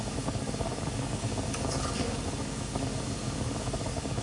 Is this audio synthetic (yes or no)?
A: yes